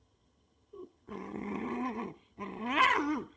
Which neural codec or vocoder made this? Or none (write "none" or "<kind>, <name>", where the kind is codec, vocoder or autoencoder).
vocoder, HiFi-GAN